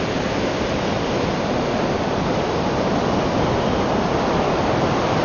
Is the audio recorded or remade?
recorded